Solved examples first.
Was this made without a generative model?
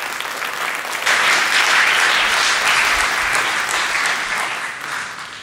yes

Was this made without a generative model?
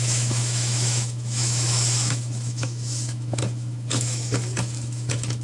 no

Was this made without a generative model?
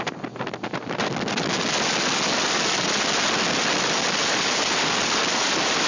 yes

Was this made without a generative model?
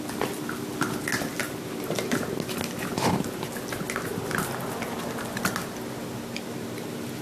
yes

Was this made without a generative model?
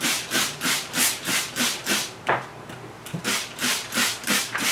no